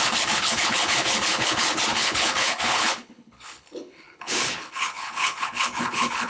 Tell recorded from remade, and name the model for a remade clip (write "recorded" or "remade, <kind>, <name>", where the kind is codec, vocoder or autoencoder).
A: remade, codec, HILCodec